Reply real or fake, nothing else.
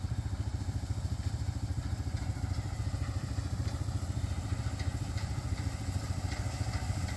fake